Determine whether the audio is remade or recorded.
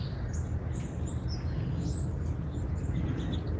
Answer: recorded